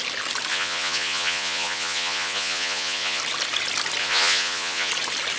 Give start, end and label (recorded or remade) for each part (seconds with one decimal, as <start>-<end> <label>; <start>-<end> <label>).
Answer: 0.0-0.5 recorded; 0.5-3.2 remade; 3.2-4.0 recorded; 4.0-4.9 remade; 4.9-5.4 recorded